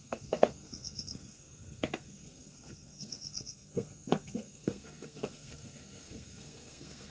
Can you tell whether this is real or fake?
fake